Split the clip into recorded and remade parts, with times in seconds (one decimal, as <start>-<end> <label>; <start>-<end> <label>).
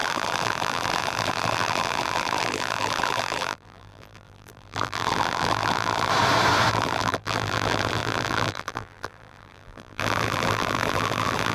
0.0-6.1 remade; 6.1-6.7 recorded; 6.7-11.5 remade